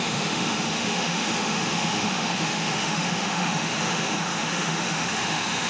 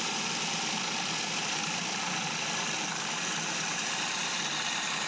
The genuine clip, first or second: second